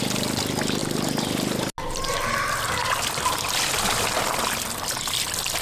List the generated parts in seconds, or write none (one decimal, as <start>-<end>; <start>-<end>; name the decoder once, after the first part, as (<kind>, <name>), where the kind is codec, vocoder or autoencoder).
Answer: none